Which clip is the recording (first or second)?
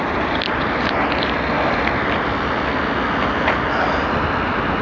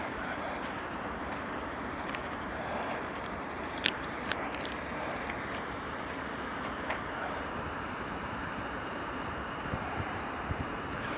first